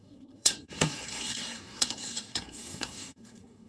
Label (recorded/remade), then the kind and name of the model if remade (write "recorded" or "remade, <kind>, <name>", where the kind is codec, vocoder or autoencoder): remade, codec, SNAC